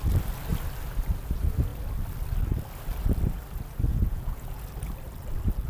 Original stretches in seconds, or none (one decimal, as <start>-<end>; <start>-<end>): 0.0-3.9; 4.6-5.7